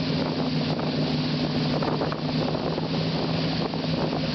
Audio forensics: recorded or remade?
recorded